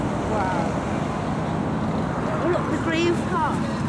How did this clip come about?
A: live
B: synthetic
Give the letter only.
A